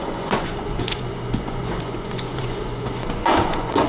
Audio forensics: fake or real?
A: fake